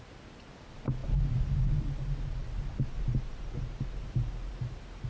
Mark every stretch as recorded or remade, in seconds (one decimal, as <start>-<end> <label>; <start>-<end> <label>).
0.0-5.1 recorded